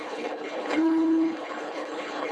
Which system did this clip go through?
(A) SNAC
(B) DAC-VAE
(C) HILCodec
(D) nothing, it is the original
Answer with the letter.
C